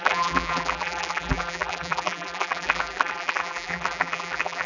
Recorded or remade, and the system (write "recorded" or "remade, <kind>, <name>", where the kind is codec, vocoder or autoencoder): remade, vocoder, BigVGAN v2